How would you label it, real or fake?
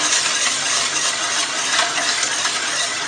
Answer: real